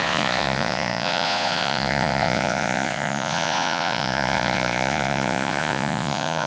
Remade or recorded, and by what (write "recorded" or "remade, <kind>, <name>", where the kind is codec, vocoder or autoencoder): remade, vocoder, Vocos